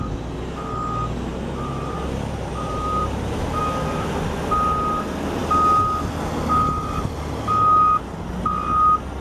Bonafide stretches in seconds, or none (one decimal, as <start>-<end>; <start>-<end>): 0.0-1.3; 3.6-9.2